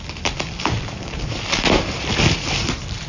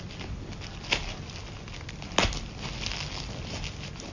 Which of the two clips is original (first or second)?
second